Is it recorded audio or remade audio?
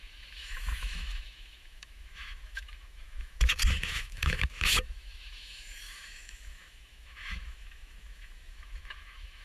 remade